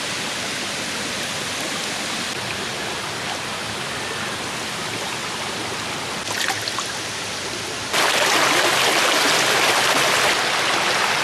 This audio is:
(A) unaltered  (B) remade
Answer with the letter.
A